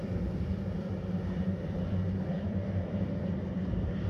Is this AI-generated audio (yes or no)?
yes